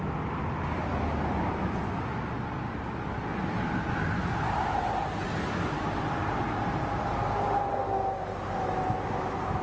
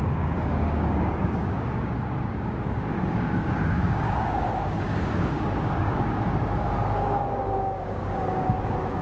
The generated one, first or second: second